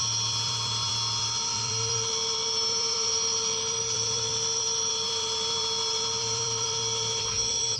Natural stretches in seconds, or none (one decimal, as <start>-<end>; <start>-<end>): none